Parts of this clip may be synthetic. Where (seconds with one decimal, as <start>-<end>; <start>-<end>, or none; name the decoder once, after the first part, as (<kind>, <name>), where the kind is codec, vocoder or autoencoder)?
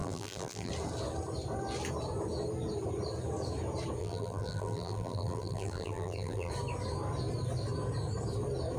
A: 0.0-0.7 (vocoder, BigVGAN v2); 4.0-6.5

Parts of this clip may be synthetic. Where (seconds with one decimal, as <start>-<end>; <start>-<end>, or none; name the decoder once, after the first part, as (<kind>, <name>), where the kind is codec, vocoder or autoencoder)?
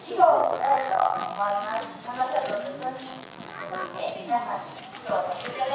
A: 0.4-1.8 (vocoder, BigVGAN v2); 3.1-4.0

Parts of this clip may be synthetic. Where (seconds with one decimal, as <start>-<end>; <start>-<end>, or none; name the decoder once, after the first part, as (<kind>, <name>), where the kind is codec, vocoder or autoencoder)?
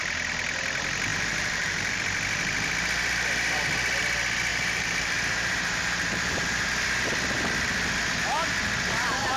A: 1.1-2.0 (vocoder, BigVGAN v2); 4.5-6.7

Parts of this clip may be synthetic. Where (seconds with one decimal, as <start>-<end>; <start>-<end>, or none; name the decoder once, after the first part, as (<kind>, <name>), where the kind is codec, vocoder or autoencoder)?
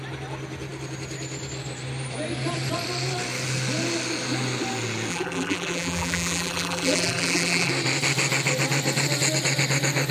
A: 5.1-7.7 (vocoder, BigVGAN v2)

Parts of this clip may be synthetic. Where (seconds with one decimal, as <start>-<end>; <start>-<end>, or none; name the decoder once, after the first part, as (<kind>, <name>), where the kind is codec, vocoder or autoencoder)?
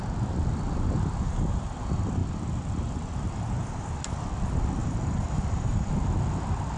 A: 4.8-5.9 (vocoder, BigVGAN v2)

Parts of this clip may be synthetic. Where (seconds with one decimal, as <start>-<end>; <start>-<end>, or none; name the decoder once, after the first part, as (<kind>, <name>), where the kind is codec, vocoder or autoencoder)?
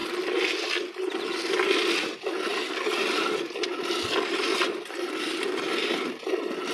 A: 0.0-0.6 (vocoder, BigVGAN v2); 2.5-6.7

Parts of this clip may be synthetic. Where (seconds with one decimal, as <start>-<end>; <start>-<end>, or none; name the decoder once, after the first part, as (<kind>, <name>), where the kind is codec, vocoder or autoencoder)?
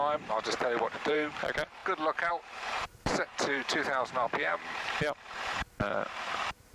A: 0.0-1.8 (vocoder, BigVGAN v2); 2.3-6.7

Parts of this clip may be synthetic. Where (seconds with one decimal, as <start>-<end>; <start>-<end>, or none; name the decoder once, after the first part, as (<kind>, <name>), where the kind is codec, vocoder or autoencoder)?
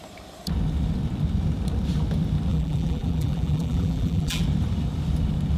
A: 2.5-4.4 (vocoder, BigVGAN v2)